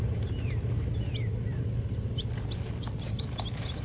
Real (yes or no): no